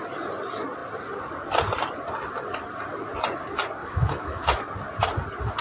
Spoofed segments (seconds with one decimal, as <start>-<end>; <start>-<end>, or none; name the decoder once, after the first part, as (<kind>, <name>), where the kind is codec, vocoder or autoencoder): 3.8-4.6 (autoencoder, DAC-VAE)